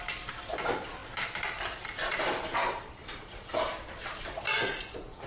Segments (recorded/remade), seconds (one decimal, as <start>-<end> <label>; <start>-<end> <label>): 0.0-1.0 remade; 1.0-2.1 recorded; 2.1-5.3 remade